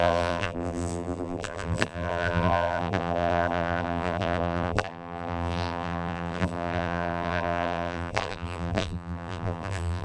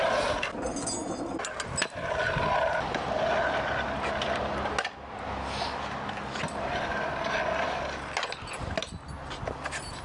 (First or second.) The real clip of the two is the second